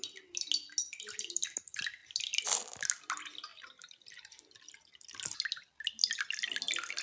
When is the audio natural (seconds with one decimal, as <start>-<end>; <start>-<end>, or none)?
0.0-3.5; 4.7-7.0